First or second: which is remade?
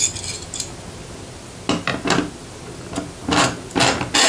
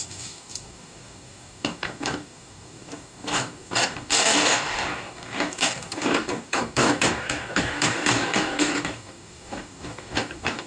second